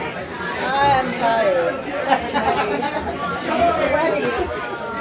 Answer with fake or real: real